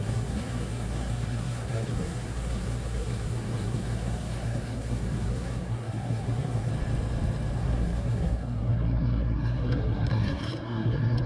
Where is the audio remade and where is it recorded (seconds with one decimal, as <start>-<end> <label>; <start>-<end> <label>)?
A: 0.0-6.7 remade; 6.7-7.6 recorded; 7.6-11.3 remade